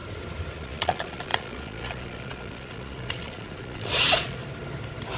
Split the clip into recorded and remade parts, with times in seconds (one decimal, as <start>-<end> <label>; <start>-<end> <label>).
0.0-0.5 recorded; 0.5-4.4 remade; 4.4-5.2 recorded